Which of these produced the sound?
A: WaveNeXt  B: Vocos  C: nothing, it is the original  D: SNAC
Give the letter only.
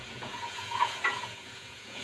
B